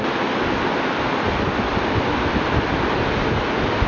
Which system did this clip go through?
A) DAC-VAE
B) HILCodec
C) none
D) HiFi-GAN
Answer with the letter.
C